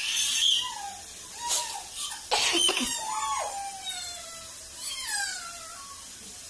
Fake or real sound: real